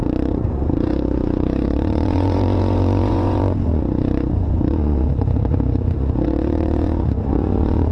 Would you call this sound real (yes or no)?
no